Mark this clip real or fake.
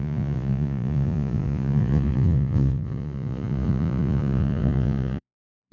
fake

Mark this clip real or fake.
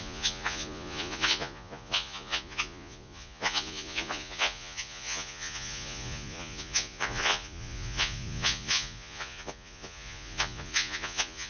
fake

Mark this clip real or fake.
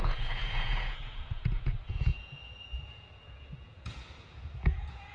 fake